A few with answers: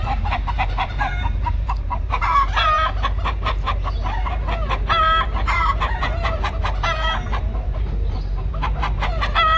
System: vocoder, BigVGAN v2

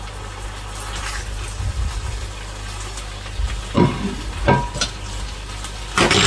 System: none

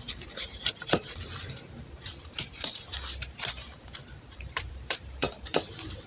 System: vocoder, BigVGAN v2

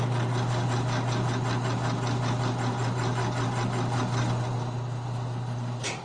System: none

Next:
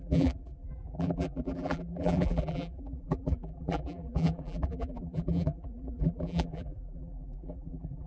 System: vocoder, BigVGAN v2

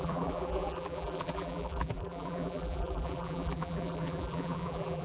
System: vocoder, BigVGAN v2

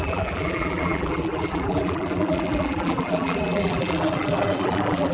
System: vocoder, BigVGAN v2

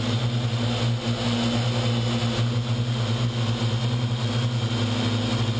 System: none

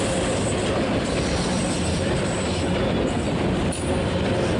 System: none